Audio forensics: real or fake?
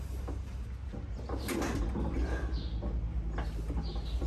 real